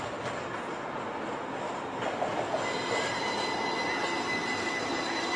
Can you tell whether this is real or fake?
real